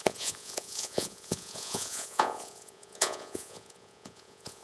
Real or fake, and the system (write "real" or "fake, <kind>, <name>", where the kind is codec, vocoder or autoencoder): fake, vocoder, Vocos